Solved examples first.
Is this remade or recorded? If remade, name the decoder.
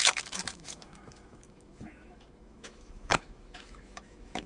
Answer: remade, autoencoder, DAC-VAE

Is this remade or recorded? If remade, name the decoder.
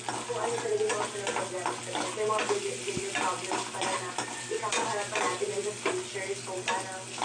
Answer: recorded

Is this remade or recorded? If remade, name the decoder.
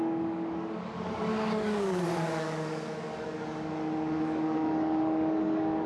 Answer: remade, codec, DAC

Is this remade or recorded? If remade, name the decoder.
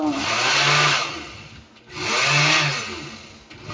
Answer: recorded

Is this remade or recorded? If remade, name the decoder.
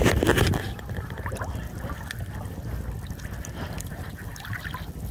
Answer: remade, vocoder, BigVGAN v2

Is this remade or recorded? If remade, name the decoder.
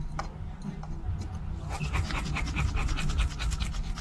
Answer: recorded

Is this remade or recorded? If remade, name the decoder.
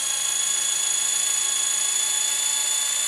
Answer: recorded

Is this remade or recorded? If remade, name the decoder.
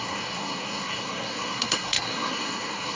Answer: remade, codec, SNAC